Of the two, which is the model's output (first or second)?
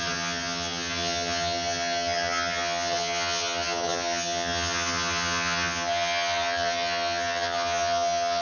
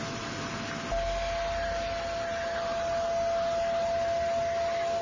first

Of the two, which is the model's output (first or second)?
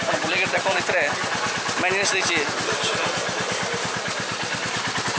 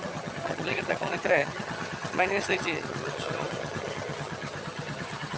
second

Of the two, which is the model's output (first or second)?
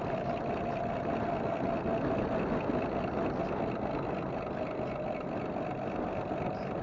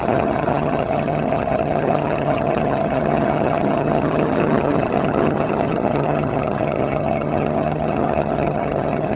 second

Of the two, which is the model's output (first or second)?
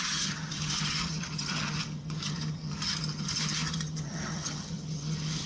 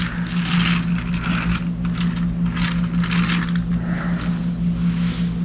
first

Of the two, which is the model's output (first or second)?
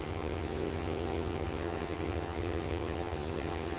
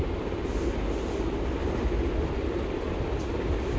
first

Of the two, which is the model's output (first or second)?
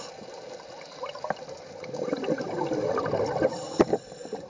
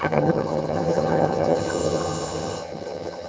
second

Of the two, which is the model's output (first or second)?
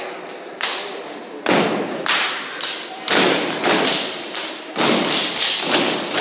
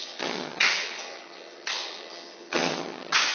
second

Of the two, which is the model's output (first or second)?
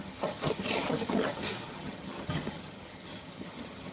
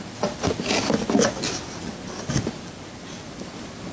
first